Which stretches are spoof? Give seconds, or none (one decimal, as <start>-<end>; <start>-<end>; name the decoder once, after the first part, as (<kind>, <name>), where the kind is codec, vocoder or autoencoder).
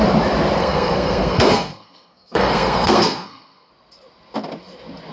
0.6-3.7 (codec, SNAC)